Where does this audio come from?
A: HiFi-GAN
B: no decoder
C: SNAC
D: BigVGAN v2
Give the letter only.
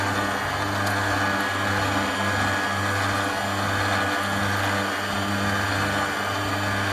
B